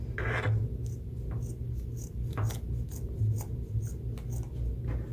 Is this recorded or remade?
recorded